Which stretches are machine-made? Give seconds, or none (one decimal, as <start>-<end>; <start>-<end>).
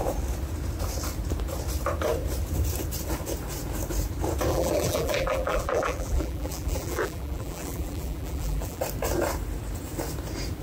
4.5-8.8